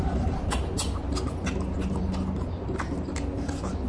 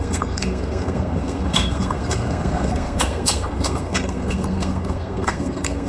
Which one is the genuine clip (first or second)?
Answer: first